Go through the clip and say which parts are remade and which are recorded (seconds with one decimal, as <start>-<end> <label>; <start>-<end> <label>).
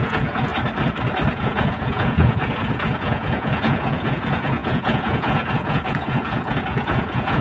0.0-0.5 remade; 0.5-1.3 recorded; 1.3-7.4 remade